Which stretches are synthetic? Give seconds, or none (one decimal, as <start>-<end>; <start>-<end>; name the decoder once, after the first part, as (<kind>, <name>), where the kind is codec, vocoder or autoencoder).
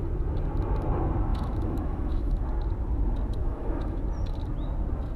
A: 1.3-2.4 (autoencoder, DAC-VAE); 3.4-4.0